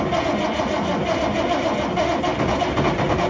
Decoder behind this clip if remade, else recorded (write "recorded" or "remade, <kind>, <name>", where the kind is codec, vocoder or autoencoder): recorded